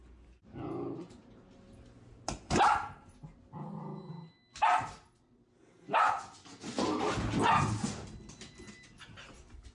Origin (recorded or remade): recorded